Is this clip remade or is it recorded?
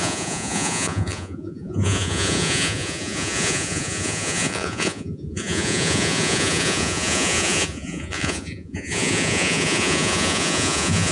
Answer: remade